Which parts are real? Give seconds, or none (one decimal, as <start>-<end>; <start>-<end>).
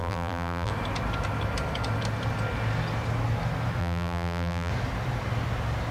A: 0.7-3.8; 4.7-5.9